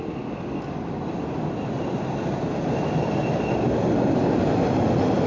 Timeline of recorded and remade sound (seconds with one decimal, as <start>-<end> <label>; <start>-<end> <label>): 0.0-5.3 recorded